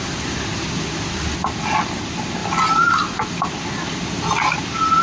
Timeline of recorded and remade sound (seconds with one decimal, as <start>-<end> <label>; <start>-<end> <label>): 0.0-5.0 recorded